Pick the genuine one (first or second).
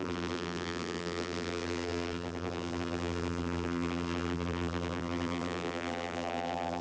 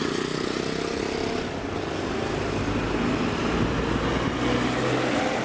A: second